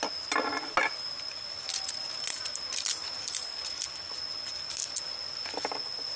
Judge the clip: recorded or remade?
recorded